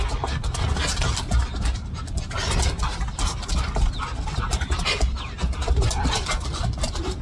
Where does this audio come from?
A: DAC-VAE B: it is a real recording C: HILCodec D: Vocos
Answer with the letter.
B